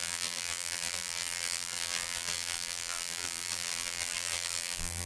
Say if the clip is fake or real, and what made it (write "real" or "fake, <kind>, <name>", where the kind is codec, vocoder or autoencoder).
fake, vocoder, BigVGAN v2